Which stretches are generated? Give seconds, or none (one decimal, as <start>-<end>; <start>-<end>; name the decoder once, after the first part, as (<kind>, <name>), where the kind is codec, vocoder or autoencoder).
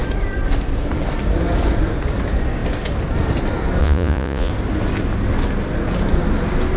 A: 3.8-4.5 (vocoder, Vocos)